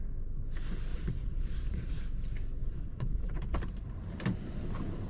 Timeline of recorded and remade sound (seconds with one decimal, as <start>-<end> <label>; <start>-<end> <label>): 0.0-0.9 recorded; 0.9-2.0 remade; 2.0-2.6 recorded; 2.6-3.4 remade; 3.4-5.1 recorded